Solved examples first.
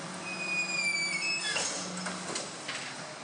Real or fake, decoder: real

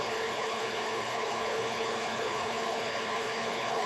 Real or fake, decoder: fake, codec, HILCodec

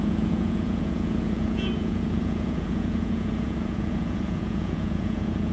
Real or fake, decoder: fake, vocoder, Vocos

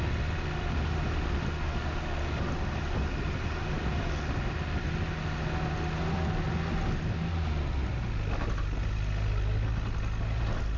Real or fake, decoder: real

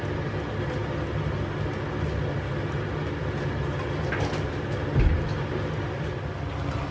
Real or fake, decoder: real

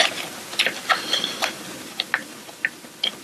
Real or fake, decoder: real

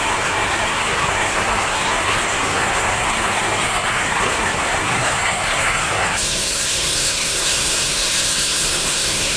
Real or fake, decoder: fake, codec, SNAC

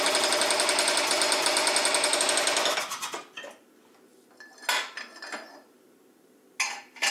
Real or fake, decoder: real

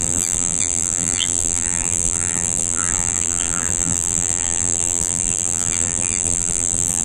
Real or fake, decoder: fake, vocoder, BigVGAN v2